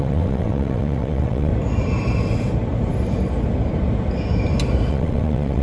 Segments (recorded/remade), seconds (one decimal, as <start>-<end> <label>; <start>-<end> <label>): 0.0-1.5 remade; 1.5-4.9 recorded; 4.9-5.6 remade